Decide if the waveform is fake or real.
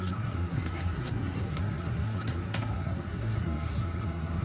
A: fake